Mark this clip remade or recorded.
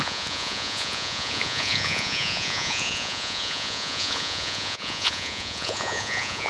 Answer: remade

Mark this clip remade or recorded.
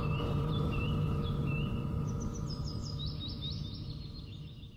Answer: remade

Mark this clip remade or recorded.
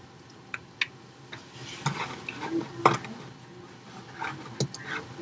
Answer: recorded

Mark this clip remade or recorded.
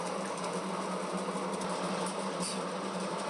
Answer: recorded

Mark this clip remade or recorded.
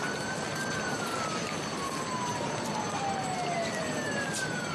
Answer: recorded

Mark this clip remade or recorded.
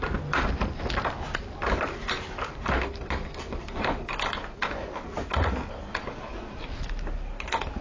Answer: recorded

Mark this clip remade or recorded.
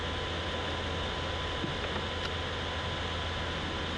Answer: recorded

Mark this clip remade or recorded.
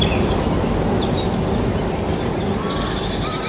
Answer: recorded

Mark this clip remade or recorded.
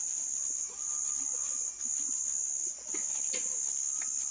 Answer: recorded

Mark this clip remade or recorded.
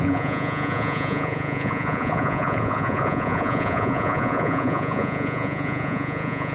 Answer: remade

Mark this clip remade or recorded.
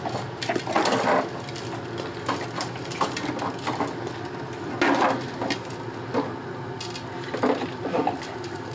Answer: recorded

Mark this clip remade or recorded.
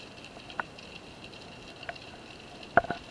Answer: recorded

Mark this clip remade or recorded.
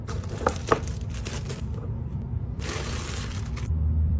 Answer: remade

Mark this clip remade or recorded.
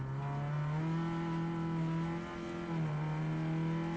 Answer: recorded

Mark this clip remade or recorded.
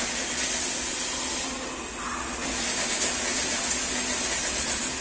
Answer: recorded